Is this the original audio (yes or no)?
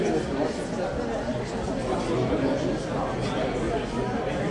yes